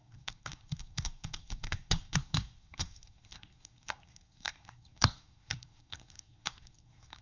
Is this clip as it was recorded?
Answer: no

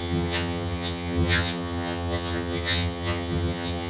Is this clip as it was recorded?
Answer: no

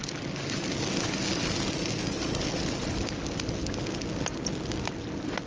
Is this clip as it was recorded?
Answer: yes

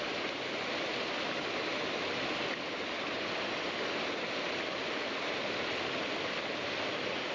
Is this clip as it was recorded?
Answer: yes